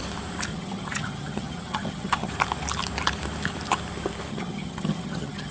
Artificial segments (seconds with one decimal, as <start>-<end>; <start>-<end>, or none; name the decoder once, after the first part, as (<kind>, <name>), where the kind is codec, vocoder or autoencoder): 0.5-2.3 (vocoder, HiFi-GAN); 4.3-5.5